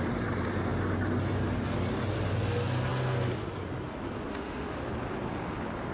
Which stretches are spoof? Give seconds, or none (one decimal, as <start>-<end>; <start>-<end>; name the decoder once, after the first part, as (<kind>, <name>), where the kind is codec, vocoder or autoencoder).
4.3-4.9 (autoencoder, DAC-VAE)